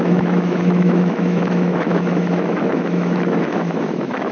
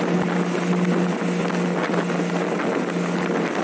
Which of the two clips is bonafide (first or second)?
second